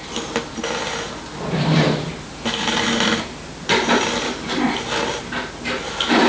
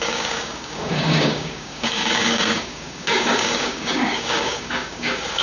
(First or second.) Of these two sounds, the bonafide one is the first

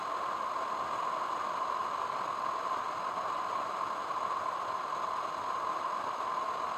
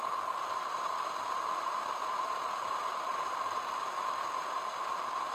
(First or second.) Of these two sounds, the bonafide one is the first